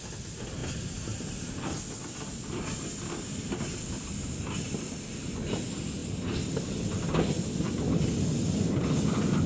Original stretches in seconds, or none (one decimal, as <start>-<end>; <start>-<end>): 0.0-9.5